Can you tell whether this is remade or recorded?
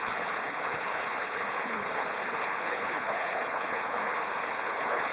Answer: remade